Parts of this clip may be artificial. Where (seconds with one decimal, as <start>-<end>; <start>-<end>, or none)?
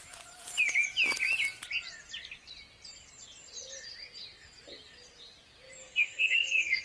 5.8-6.8